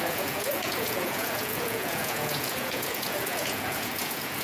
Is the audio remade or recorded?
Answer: remade